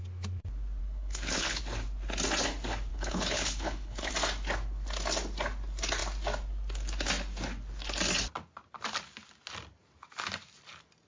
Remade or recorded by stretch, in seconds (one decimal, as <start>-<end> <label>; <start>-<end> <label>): 0.0-0.8 recorded; 0.8-1.6 remade; 1.6-2.9 recorded; 2.9-4.1 remade; 4.1-11.1 recorded

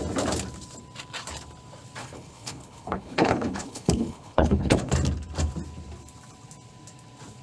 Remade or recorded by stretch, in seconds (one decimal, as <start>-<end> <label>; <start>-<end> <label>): 0.0-2.0 recorded; 2.0-4.9 remade; 4.9-7.4 recorded

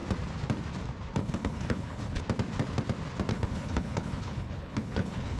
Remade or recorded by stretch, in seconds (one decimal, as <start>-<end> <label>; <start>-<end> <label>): 0.0-1.2 recorded; 1.2-2.2 remade; 2.2-3.3 recorded; 3.3-5.4 remade